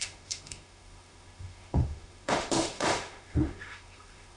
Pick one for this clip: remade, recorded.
remade